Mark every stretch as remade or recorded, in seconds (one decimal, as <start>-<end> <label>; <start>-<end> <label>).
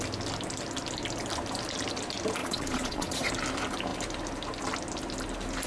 0.0-2.4 recorded; 2.4-3.3 remade; 3.3-5.7 recorded